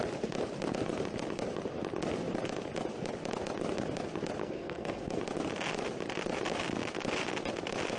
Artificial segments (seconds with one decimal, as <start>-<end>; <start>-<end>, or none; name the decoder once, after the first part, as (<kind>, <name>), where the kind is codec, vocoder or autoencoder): 4.4-5.2 (codec, SNAC)